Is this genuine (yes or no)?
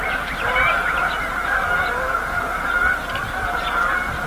yes